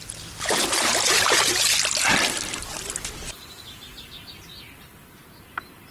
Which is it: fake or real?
real